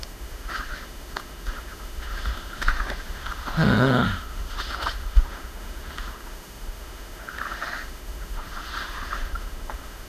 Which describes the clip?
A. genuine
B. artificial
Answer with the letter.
B